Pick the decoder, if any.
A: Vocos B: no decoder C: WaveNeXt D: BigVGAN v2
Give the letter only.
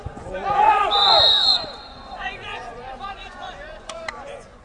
A